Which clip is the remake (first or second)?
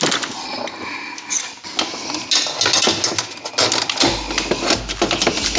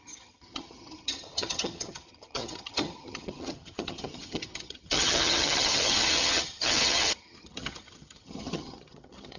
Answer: second